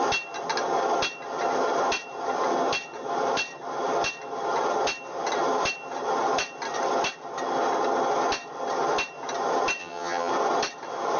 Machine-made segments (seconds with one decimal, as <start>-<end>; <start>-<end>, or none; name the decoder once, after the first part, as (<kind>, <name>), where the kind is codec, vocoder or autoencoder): 9.8-10.3 (vocoder, HiFi-GAN)